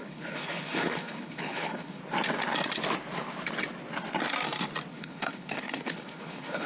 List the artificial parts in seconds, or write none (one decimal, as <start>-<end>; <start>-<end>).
0.0-2.0; 4.9-6.7